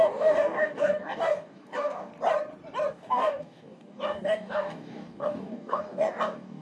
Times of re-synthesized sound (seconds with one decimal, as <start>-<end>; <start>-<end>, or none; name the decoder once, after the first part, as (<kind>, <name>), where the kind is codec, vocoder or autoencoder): 0.0-2.1 (codec, DAC); 2.9-6.6